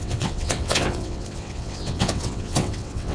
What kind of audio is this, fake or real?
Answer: fake